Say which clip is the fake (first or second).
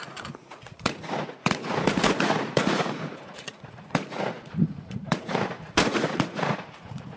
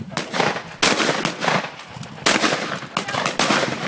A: first